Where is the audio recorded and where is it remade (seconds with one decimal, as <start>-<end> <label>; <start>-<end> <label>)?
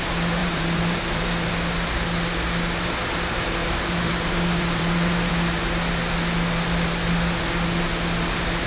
0.0-0.4 recorded; 0.4-1.5 remade; 1.5-3.6 recorded; 3.6-5.3 remade; 5.3-8.7 recorded